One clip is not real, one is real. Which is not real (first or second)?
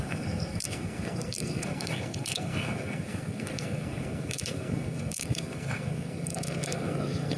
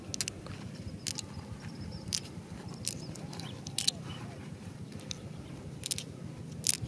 first